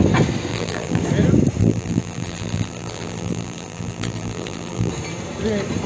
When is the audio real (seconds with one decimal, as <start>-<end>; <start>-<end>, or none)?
0.0-0.5; 1.0-1.6; 4.9-5.9